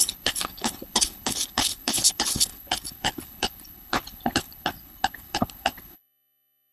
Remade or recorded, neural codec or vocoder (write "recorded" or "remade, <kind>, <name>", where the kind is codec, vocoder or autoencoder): remade, codec, HILCodec